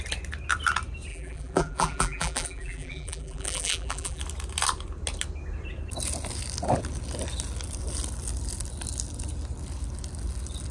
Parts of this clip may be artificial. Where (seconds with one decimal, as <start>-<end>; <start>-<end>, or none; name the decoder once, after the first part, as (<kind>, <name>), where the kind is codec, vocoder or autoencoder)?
1.1-4.2 (vocoder, BigVGAN v2)